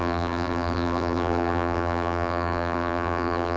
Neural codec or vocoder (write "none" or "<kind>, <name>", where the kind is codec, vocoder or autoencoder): vocoder, BigVGAN v2